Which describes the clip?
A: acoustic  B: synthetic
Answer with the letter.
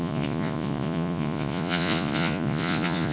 B